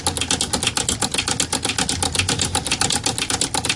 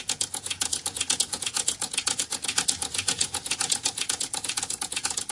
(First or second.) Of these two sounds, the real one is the first